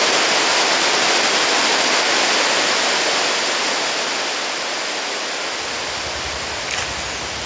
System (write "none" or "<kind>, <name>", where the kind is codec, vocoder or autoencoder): none